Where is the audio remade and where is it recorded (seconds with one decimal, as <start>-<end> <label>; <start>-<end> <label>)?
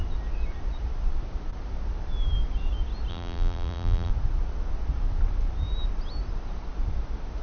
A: 0.0-3.1 recorded; 3.1-4.1 remade; 4.1-7.4 recorded